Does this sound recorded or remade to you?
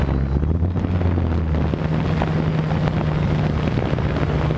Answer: recorded